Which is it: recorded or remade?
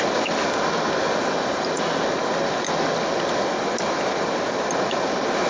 recorded